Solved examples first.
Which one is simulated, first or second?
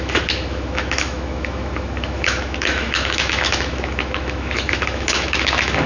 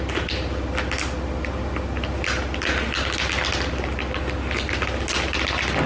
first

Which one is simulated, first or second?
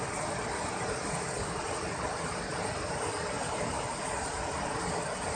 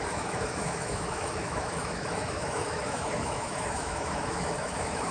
second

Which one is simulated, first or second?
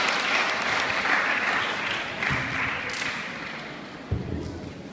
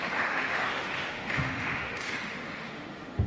second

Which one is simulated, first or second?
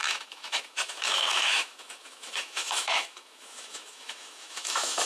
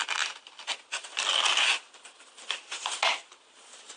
first